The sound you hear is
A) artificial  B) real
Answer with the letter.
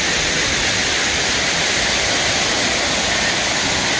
B